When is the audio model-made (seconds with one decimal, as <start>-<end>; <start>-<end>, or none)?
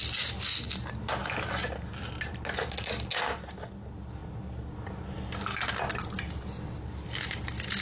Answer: none